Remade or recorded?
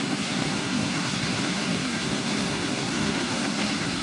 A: remade